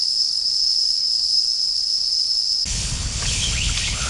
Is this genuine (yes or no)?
no